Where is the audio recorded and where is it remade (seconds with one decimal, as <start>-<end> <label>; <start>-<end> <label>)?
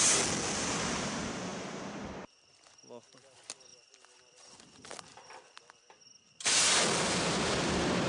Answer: 0.0-1.5 recorded; 1.5-2.1 remade; 2.1-3.7 recorded; 3.7-8.1 remade